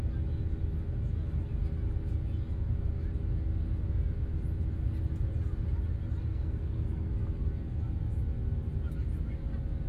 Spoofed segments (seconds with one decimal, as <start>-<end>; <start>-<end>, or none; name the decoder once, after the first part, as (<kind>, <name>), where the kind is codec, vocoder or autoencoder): 6.3-7.1 (codec, SNAC)